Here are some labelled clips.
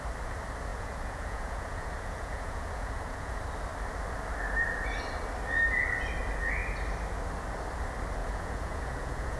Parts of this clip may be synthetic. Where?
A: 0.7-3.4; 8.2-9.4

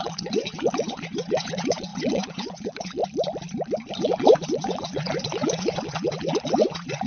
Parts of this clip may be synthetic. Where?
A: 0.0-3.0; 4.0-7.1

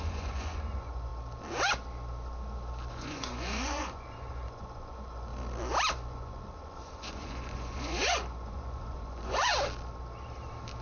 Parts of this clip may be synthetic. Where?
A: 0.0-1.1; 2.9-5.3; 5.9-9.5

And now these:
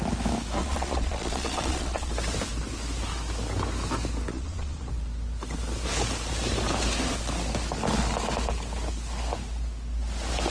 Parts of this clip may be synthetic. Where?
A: 0.6-2.1; 4.3-4.9